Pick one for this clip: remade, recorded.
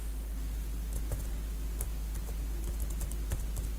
recorded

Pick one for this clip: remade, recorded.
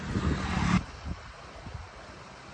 recorded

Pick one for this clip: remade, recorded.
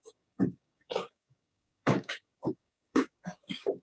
remade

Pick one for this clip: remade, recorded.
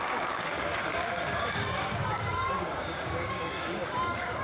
remade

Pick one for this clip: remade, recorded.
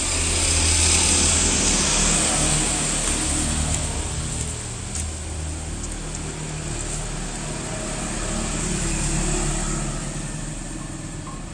recorded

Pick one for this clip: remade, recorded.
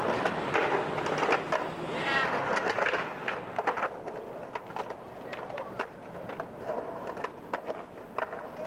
recorded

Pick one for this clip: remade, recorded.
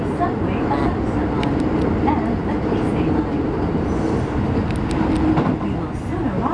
recorded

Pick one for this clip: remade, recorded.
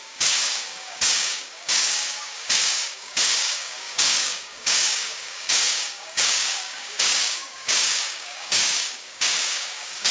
remade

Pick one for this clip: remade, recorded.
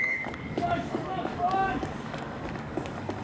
remade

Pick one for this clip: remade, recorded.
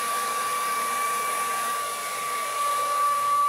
remade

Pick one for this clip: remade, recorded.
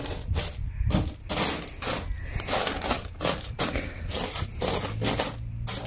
recorded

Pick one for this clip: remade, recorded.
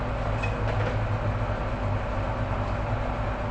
recorded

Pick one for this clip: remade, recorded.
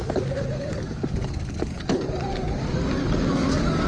remade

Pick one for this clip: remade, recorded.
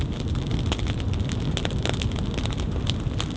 recorded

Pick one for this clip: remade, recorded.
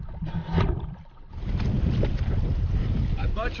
recorded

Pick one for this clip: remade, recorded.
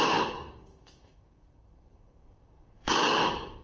remade